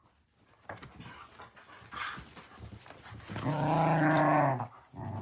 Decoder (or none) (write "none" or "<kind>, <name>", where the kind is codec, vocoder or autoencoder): none